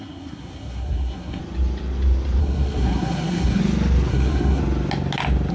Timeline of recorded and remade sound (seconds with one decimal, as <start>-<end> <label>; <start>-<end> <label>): 0.0-1.4 remade; 1.4-2.4 recorded; 2.4-3.6 remade; 3.6-4.1 recorded; 4.1-4.6 remade; 4.6-5.5 recorded